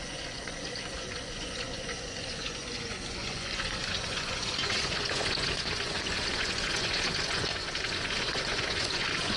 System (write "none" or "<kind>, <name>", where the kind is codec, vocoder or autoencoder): vocoder, Vocos